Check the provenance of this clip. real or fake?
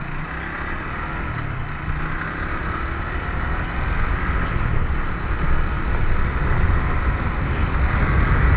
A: real